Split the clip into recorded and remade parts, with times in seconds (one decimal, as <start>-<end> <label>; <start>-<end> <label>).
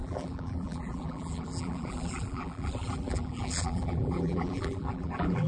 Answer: 0.0-5.5 remade